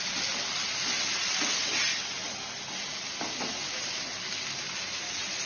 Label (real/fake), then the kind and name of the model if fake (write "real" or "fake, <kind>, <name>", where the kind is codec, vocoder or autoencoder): real